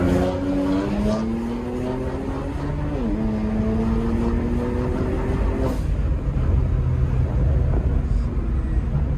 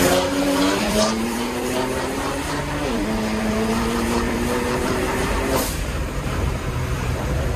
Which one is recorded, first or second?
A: first